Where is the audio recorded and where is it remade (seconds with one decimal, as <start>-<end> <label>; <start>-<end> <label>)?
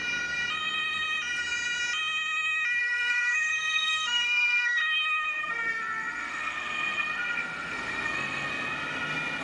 0.0-2.8 recorded; 2.8-4.8 remade; 4.8-5.4 recorded; 5.4-8.5 remade; 8.5-9.4 recorded